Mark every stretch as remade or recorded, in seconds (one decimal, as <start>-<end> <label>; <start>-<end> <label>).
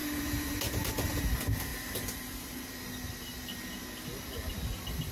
0.0-1.2 remade; 1.2-5.1 recorded